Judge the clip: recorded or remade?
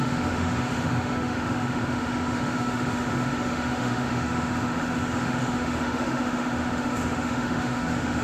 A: remade